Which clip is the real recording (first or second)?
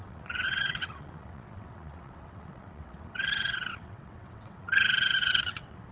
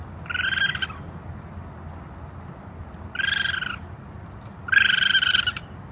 second